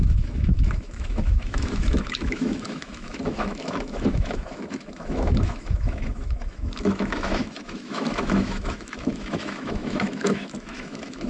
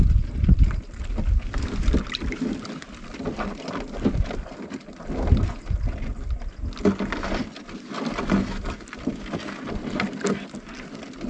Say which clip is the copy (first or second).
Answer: first